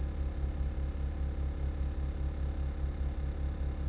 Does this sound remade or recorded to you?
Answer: recorded